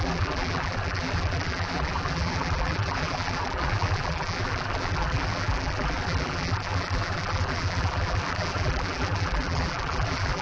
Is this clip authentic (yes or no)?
no